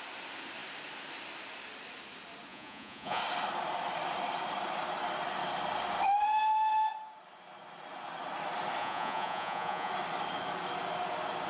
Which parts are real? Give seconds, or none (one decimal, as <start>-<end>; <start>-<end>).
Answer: 0.0-2.5; 3.2-8.8; 9.9-11.5